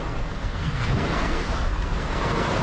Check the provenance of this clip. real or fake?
fake